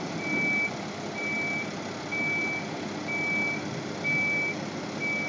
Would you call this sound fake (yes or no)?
no